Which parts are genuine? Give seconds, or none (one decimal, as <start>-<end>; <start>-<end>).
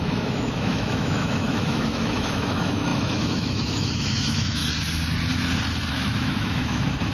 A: 4.6-5.9